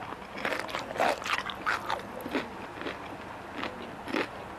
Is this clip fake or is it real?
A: real